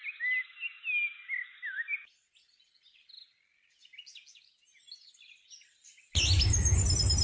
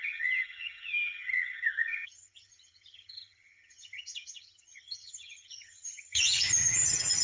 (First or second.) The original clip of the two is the first